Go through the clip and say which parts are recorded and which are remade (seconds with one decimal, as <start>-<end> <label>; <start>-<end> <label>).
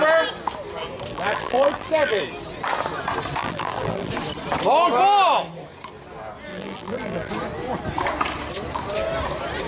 0.0-1.1 recorded; 1.1-2.2 remade; 2.2-3.4 recorded; 3.4-4.1 remade; 4.1-6.5 recorded; 6.5-7.3 remade; 7.3-9.7 recorded